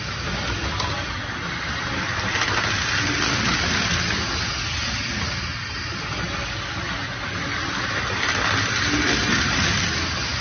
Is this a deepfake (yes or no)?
no